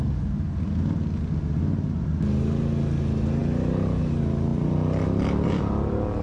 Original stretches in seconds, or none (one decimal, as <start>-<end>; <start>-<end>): 0.0-4.5; 5.6-6.2